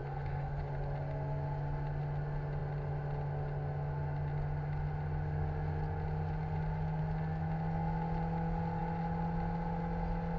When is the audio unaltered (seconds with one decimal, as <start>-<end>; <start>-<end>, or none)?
0.6-10.4